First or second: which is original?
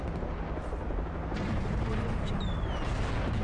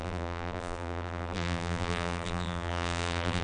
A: first